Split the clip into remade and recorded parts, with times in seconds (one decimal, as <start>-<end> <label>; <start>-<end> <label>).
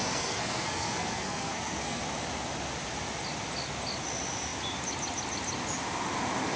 0.0-2.0 remade; 2.0-6.6 recorded